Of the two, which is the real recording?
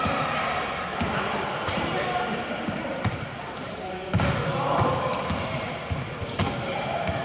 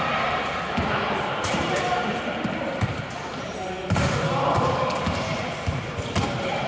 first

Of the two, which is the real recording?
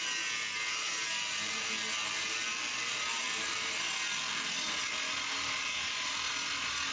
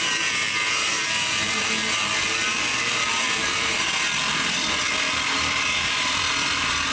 first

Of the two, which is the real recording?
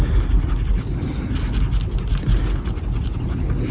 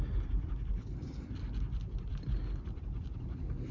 first